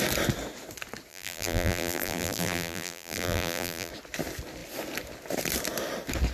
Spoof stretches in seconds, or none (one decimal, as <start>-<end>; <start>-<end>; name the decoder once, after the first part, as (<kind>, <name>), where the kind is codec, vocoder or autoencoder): 1.1-3.9 (vocoder, BigVGAN v2)